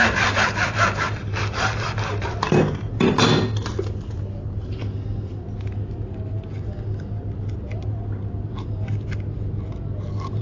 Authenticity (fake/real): real